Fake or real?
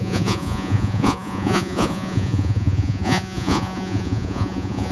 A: fake